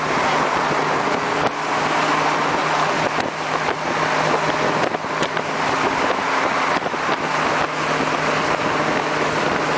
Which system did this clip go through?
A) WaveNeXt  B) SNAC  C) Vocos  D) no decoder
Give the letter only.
D